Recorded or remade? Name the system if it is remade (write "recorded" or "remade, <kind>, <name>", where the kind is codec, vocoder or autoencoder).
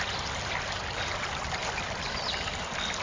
recorded